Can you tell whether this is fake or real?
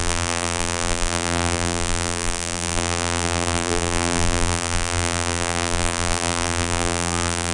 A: fake